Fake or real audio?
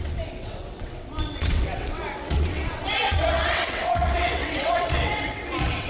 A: fake